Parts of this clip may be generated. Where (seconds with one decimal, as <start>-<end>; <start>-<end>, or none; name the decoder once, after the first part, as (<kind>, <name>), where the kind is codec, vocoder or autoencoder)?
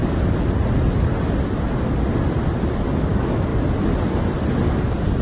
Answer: 3.1-3.5 (autoencoder, DAC-VAE)